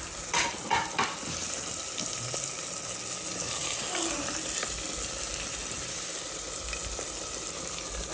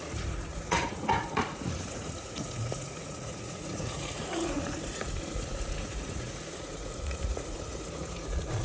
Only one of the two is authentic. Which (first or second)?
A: first